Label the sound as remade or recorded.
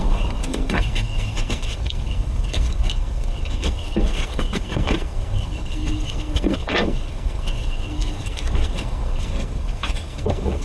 remade